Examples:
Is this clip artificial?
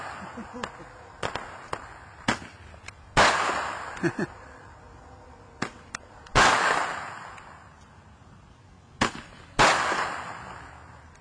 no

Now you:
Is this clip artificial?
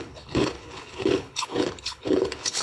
yes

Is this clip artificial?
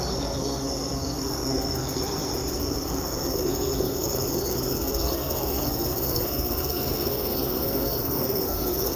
yes